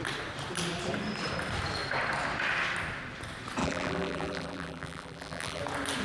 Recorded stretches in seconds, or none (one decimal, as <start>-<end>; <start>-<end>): 0.0-3.6; 5.6-6.0